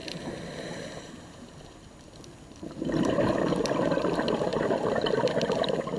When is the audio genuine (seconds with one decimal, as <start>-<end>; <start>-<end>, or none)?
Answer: 0.6-6.0